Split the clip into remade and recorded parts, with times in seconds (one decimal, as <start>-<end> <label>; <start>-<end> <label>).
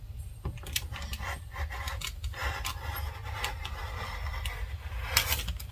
0.0-5.7 recorded